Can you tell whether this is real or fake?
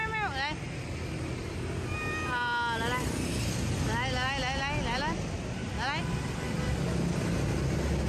real